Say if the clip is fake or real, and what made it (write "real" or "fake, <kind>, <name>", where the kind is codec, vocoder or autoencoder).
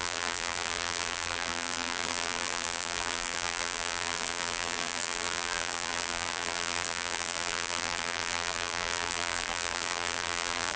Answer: fake, vocoder, BigVGAN v2